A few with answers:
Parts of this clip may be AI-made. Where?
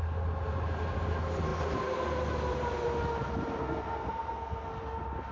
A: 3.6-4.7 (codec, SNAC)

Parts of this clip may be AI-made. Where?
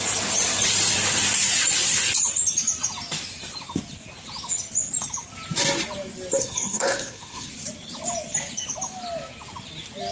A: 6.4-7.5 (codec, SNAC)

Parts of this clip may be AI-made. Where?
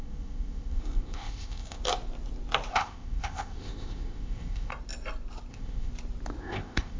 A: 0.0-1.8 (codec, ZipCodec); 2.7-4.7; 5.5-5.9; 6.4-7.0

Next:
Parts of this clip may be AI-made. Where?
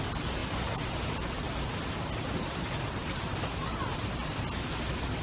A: none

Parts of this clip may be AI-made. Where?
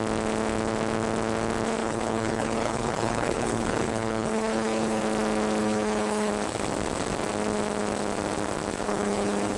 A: 1.8-5.0 (codec, HILCodec); 5.6-6.3; 8.8-9.6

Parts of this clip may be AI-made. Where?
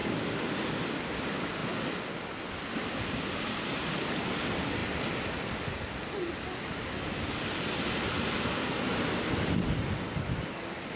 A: none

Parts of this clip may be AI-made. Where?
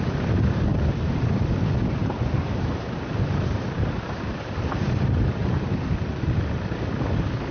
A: 0.7-1.2 (vocoder, BigVGAN v2); 2.0-5.7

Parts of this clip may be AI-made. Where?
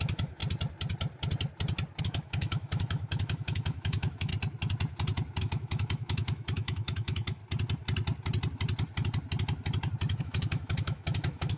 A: 0.0-0.4 (autoencoder, DAC-VAE); 2.0-4.3; 5.4-7.4; 10.2-11.6